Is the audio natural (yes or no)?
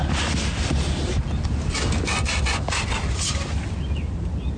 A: yes